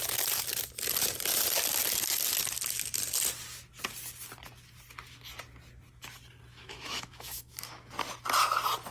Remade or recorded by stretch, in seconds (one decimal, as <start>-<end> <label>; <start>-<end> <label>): 0.0-6.5 recorded; 6.5-7.9 remade; 7.9-8.9 recorded